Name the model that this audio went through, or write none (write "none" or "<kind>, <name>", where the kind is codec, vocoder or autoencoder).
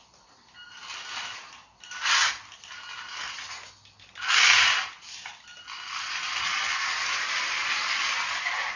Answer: none